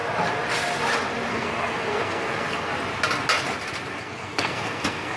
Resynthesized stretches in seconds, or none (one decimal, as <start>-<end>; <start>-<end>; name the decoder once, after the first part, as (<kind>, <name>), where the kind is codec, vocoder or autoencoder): 1.3-2.7 (codec, SNAC); 4.0-5.2